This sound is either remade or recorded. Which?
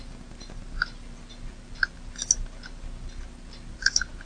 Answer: recorded